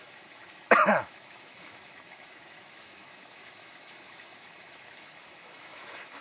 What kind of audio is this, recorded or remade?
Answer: remade